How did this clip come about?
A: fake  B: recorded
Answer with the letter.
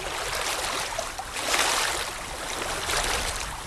B